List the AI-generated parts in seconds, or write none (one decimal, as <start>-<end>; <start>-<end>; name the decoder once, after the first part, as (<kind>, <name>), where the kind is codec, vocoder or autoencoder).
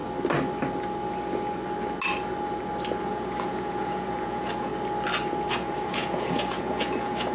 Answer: 3.0-4.7 (vocoder, Vocos); 5.5-7.3